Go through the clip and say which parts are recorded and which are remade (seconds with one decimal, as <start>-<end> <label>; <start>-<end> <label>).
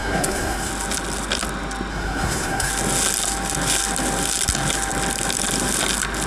0.0-0.7 remade; 0.7-1.9 recorded; 1.9-2.7 remade; 2.7-6.3 recorded